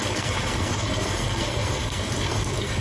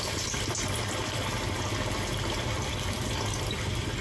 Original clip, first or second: second